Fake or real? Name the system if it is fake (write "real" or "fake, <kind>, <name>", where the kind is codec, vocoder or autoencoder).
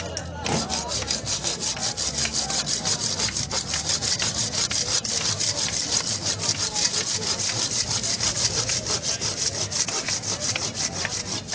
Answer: real